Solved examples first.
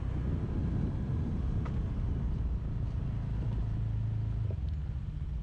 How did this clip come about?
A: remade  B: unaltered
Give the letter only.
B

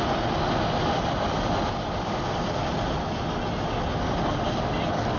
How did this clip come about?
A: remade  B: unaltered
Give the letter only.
B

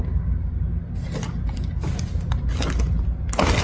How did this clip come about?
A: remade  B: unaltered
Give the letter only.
B